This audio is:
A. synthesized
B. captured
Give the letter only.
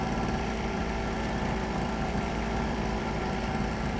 A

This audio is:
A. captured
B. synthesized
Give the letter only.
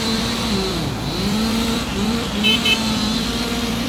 B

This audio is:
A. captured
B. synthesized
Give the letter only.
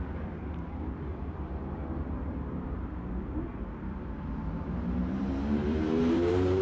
B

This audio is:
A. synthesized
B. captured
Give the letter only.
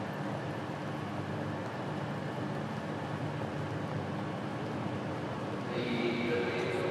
B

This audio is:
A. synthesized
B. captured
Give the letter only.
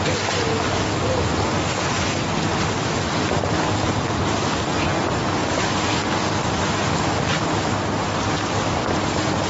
B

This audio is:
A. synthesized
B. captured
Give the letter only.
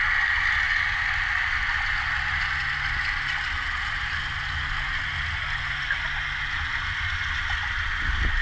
B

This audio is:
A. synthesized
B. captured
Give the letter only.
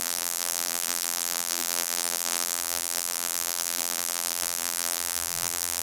A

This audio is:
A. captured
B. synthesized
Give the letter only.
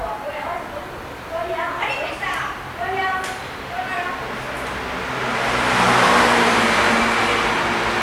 A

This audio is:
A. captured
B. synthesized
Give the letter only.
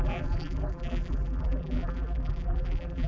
B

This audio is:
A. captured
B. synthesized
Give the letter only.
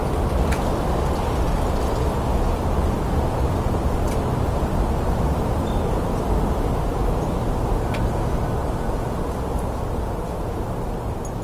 A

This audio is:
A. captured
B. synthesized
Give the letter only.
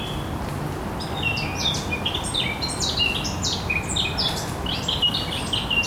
A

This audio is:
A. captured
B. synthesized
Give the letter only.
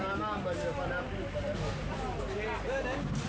A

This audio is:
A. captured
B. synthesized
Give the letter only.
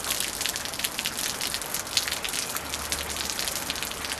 A